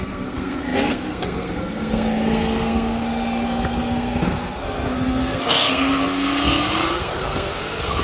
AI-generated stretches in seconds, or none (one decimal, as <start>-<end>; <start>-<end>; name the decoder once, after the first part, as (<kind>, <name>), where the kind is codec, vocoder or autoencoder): 0.0-8.0 (codec, SNAC)